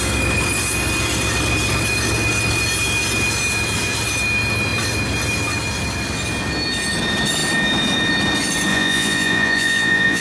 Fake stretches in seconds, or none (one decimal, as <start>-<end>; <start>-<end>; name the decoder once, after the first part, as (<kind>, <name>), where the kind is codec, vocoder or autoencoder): 8.7-10.2 (vocoder, Vocos)